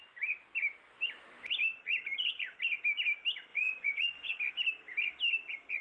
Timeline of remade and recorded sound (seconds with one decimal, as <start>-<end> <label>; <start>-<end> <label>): 0.0-3.5 recorded; 3.5-4.3 remade; 4.3-5.8 recorded